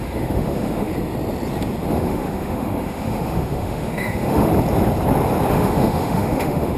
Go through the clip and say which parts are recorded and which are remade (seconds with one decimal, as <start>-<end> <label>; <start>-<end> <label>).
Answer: 0.0-0.9 remade; 0.9-1.9 recorded; 1.9-4.5 remade; 4.5-5.5 recorded; 5.5-6.8 remade